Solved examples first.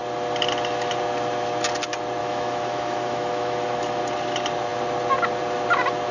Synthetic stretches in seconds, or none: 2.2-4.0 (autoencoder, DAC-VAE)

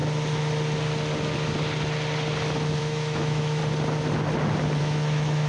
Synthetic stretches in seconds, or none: 2.8-3.6 (autoencoder, DAC-VAE); 4.8-5.5

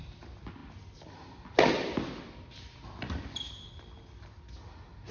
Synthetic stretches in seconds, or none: none

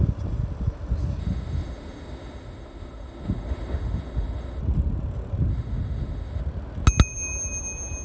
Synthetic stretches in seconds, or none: 1.2-4.6 (autoencoder, DAC-VAE); 5.5-6.4

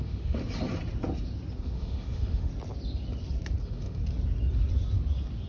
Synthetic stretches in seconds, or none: 0.0-0.4 (autoencoder, DAC-VAE); 1.6-2.5; 3.6-4.0

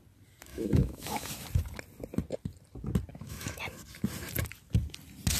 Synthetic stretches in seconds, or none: 0.5-1.3 (autoencoder, DAC-VAE); 3.1-3.6

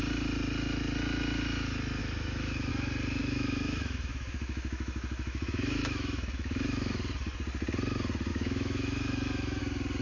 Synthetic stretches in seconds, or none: 2.0-2.7 (autoencoder, DAC-VAE); 3.2-6.9; 8.3-9.6